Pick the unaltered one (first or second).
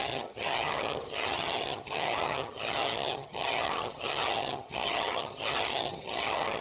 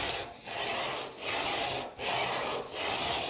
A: second